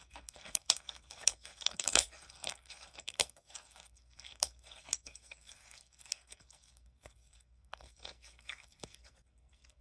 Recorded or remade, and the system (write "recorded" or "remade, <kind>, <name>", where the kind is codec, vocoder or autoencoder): remade, codec, SNAC